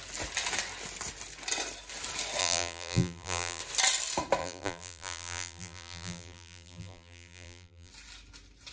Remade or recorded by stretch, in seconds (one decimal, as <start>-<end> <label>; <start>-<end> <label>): 0.0-2.4 recorded; 2.4-3.6 remade; 3.6-4.4 recorded; 4.4-7.9 remade; 7.9-8.7 recorded